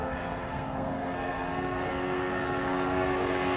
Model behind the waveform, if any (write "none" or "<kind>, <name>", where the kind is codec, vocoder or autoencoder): codec, SNAC